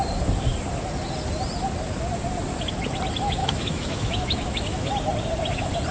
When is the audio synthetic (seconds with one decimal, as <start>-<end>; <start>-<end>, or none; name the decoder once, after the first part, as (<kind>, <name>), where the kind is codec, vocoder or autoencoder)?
3.4-4.9 (autoencoder, DAC-VAE)